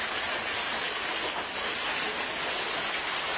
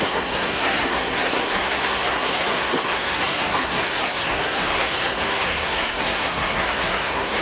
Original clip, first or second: first